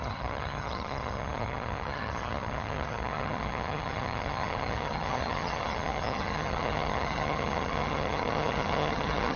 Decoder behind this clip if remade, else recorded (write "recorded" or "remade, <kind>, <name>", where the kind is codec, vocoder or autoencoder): remade, vocoder, HiFi-GAN